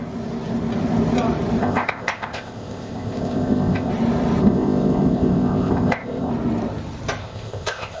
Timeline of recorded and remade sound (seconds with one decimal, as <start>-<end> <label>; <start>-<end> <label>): 0.0-1.6 recorded; 1.6-3.9 remade; 3.9-4.4 recorded; 4.4-6.3 remade; 6.3-7.2 recorded; 7.2-8.0 remade